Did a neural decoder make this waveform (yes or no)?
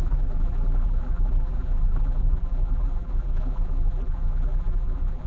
yes